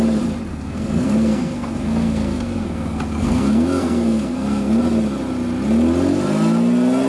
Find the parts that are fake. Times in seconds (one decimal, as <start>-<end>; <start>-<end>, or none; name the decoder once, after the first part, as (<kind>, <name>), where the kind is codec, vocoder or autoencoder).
0.5-4.8 (codec, SNAC)